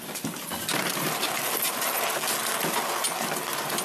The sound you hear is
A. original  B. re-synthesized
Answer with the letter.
A